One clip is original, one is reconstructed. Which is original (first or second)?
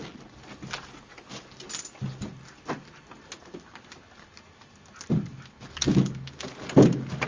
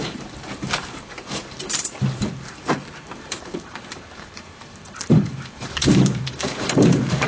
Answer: first